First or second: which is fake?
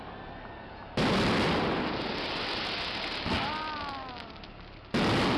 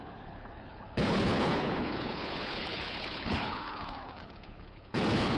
second